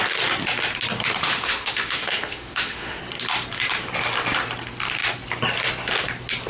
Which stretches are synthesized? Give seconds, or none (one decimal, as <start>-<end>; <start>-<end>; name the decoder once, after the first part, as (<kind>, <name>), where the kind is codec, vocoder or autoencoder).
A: 1.2-3.0 (autoencoder, DAC-VAE)